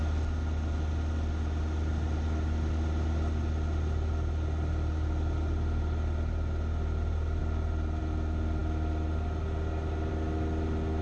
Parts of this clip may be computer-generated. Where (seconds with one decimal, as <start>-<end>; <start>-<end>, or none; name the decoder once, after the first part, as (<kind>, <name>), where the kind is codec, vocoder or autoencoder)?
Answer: none